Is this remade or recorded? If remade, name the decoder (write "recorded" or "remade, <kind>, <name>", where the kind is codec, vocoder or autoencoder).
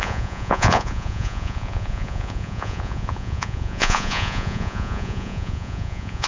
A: remade, vocoder, Vocos